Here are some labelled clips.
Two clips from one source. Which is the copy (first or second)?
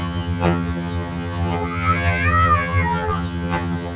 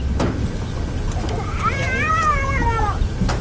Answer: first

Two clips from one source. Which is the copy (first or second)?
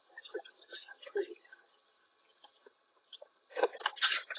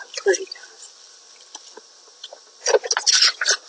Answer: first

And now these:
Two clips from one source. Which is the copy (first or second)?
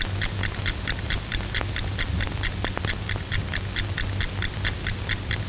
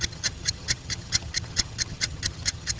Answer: second